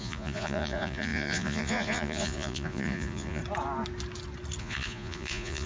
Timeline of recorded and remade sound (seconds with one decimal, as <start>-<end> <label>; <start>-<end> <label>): 0.0-3.4 remade; 3.4-4.6 recorded; 4.6-5.7 remade